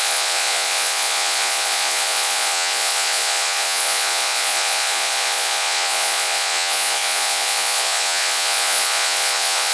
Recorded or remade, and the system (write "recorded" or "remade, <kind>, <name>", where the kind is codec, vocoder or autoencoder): remade, vocoder, Vocos